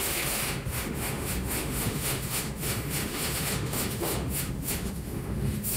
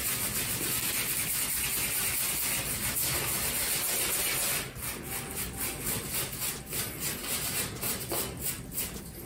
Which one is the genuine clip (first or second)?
second